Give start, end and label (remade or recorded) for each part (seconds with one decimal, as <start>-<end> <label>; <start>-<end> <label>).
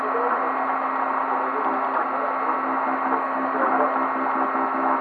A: 0.0-5.0 recorded